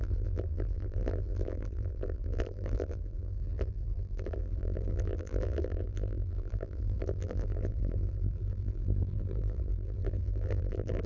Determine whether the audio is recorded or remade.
remade